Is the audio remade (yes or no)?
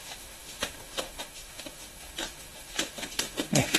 yes